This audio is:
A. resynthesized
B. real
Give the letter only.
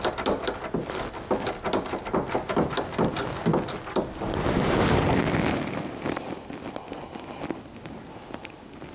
B